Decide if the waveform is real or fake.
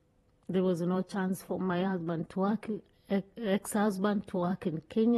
fake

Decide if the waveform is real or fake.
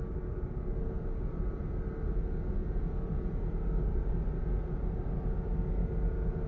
real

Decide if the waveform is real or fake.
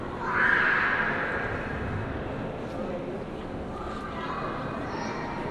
real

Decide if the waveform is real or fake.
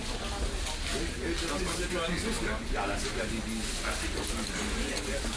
real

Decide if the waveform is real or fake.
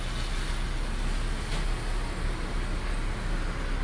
real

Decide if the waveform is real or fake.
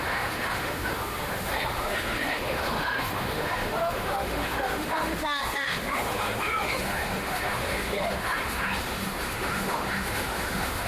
fake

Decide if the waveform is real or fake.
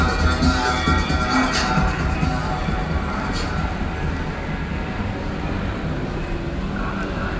real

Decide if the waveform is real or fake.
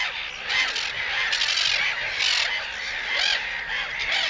real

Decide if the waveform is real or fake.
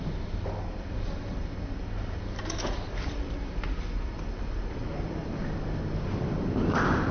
fake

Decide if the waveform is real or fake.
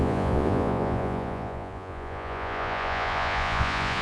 fake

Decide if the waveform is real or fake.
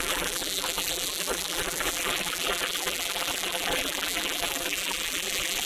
fake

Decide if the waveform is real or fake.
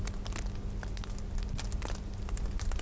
real